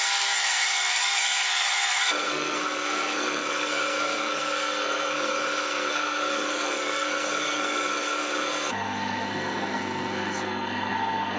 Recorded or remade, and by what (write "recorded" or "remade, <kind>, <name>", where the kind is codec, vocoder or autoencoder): remade, codec, SNAC